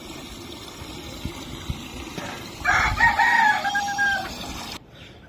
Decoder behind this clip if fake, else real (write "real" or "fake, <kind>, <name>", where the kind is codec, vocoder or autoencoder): fake, vocoder, BigVGAN v2